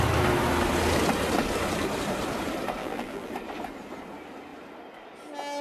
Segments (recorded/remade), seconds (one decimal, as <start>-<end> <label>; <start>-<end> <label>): 0.0-2.8 recorded; 2.8-3.3 remade; 3.3-5.6 recorded

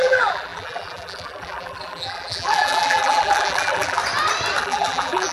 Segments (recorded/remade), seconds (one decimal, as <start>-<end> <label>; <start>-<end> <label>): 0.0-4.0 remade; 4.0-4.6 recorded; 4.6-5.3 remade